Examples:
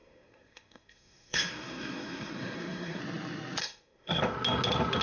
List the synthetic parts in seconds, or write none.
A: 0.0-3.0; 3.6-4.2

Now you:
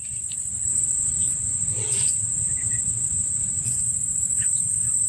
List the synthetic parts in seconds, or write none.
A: 0.7-3.8